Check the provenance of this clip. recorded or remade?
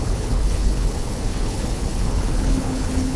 remade